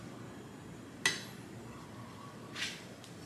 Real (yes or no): yes